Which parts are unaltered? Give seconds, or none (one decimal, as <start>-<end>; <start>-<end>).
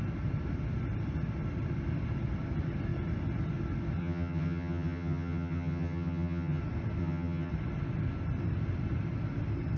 0.0-4.0; 6.6-7.0; 7.5-9.8